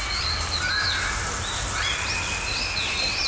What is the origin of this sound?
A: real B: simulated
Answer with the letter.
A